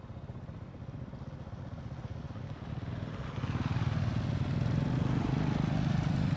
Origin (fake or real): real